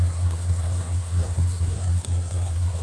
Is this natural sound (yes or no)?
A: no